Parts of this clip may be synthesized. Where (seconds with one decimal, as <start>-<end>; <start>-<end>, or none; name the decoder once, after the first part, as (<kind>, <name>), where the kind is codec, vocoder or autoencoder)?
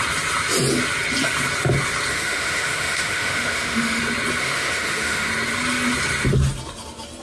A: 2.1-4.0 (autoencoder, DAC-VAE); 4.4-5.3